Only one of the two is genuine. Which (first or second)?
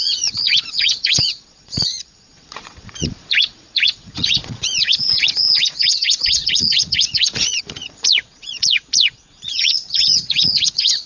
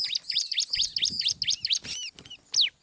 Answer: second